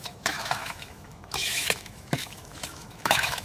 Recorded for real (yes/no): no